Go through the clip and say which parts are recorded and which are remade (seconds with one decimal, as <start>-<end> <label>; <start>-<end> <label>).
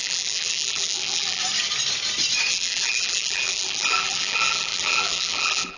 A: 0.0-1.4 remade; 1.4-2.5 recorded; 2.5-5.8 remade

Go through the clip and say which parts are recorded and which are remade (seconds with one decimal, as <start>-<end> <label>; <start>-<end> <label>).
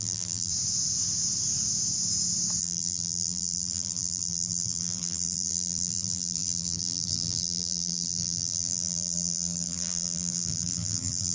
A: 0.0-0.5 remade; 0.5-2.6 recorded; 2.6-11.3 remade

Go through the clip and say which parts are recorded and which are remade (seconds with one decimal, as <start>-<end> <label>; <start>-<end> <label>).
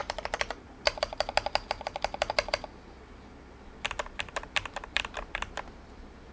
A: 0.0-1.1 remade; 1.1-4.1 recorded; 4.1-6.3 remade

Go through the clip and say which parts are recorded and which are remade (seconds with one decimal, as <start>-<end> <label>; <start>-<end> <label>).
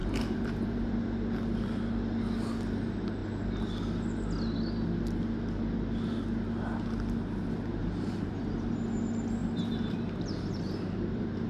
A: 0.0-1.0 remade; 1.0-7.8 recorded; 7.8-8.7 remade; 8.7-9.4 recorded; 9.4-11.5 remade